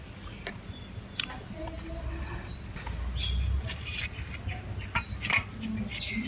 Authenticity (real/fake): real